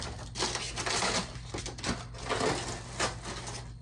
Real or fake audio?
real